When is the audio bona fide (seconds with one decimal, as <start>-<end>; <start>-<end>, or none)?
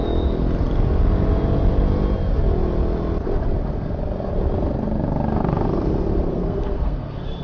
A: 0.0-6.3